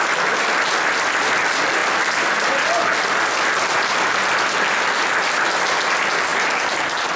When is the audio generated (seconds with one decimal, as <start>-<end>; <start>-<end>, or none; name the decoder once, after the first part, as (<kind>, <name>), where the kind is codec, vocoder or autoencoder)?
none